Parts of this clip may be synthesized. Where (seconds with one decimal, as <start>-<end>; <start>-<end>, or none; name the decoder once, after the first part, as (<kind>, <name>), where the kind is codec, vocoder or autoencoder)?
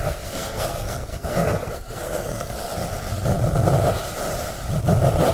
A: 0.0-2.6 (codec, SNAC)